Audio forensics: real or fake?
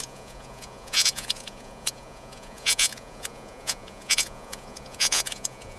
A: fake